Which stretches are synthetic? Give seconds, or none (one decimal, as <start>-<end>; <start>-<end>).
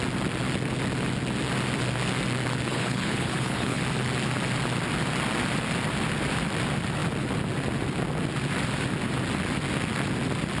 2.7-3.8